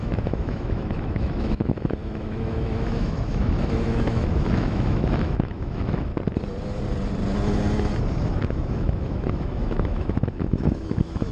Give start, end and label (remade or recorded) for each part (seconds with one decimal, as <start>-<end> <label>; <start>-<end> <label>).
0.0-6.1 remade; 6.1-8.5 recorded; 8.5-11.3 remade